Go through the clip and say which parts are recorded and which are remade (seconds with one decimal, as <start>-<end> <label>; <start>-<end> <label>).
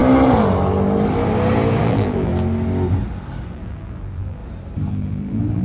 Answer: 0.0-1.8 recorded; 1.8-2.3 remade; 2.3-3.5 recorded; 3.5-4.4 remade; 4.4-4.9 recorded; 4.9-5.6 remade